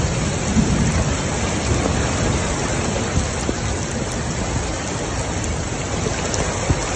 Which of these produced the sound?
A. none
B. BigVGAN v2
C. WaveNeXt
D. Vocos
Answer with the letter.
A